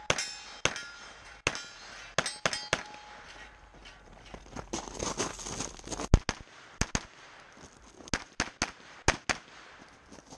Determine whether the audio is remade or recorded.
recorded